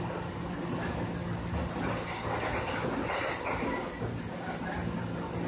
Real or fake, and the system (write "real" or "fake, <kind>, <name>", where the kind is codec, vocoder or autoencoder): real